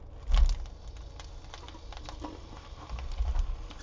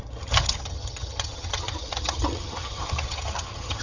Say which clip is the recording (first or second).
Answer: first